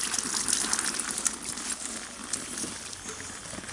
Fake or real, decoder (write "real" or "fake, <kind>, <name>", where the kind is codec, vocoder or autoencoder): real